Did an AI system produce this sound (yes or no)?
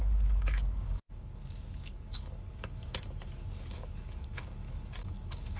yes